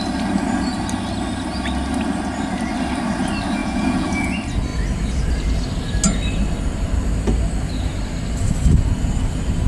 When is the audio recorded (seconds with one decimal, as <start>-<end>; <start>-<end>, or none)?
0.0-3.6; 4.3-9.7